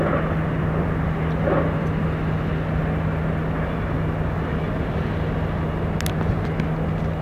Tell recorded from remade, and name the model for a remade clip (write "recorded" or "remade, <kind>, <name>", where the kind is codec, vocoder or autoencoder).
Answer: recorded